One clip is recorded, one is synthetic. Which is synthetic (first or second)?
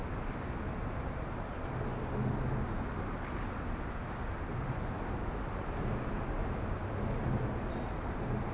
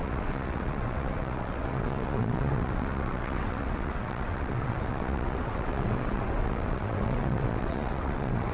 second